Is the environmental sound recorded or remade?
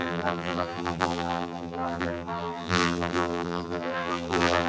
remade